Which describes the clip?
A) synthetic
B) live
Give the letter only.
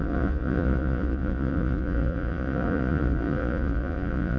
A